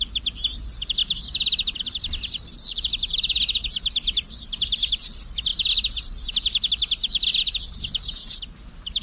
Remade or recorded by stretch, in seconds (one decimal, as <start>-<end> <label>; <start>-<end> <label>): 0.0-9.0 recorded